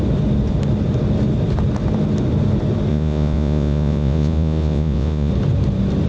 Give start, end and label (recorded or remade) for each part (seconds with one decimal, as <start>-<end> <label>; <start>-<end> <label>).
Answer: 0.0-2.9 recorded; 2.9-5.3 remade; 5.3-6.1 recorded